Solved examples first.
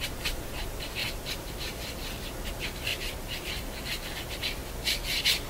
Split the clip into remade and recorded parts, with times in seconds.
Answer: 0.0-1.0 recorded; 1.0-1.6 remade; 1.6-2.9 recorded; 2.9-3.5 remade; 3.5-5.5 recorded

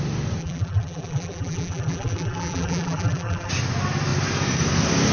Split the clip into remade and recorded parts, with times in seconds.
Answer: 0.0-0.4 recorded; 0.4-3.5 remade; 3.5-5.1 recorded

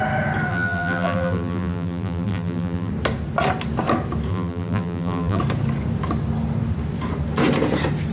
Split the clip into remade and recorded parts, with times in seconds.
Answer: 0.0-0.5 recorded; 0.5-2.9 remade; 2.9-4.3 recorded; 4.3-5.4 remade; 5.4-8.1 recorded

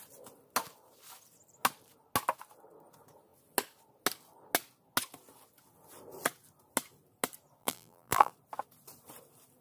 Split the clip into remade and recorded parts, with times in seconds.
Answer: 0.0-7.6 recorded; 7.6-8.3 remade; 8.3-9.6 recorded

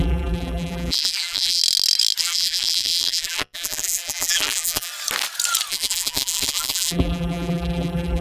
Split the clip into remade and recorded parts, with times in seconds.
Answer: 0.0-1.6 remade; 1.6-2.2 recorded; 2.2-4.9 remade; 4.9-5.7 recorded; 5.7-8.2 remade

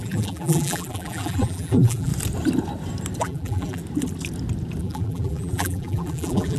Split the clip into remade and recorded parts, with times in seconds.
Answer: 0.0-2.1 remade; 2.1-3.2 recorded; 3.2-3.8 remade; 3.8-4.8 recorded; 4.8-6.6 remade

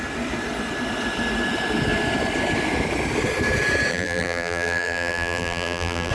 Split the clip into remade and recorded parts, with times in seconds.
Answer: 0.0-3.9 recorded; 3.9-6.1 remade